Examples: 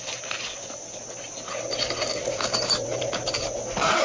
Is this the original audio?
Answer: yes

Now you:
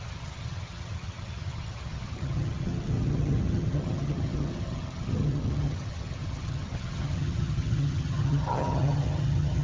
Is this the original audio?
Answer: no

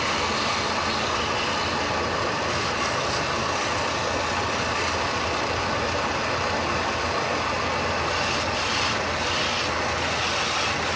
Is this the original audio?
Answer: yes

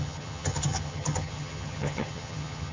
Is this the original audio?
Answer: no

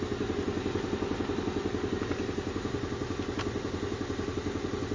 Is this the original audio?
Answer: yes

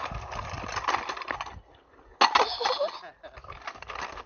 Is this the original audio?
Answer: yes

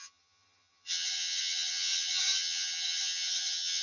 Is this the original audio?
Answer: no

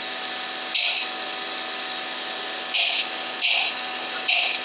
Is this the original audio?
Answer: yes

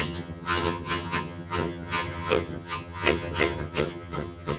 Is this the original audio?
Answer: no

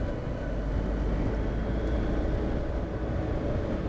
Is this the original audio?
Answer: yes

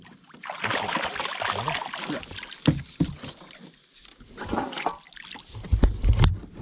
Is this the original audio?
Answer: yes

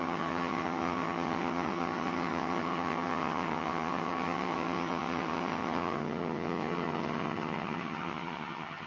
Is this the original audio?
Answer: no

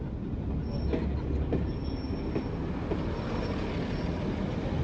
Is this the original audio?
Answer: yes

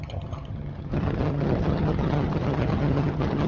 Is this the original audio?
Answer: no